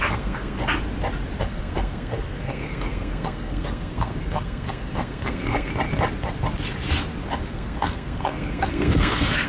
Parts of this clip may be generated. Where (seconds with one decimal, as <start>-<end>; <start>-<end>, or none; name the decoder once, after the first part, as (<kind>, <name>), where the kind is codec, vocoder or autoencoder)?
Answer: 0.0-0.6 (codec, SNAC); 1.4-5.7; 7.4-9.5